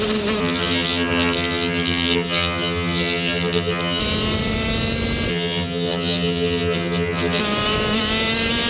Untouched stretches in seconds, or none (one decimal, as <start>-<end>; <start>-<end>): 0.0-0.4; 4.0-5.3; 7.4-8.7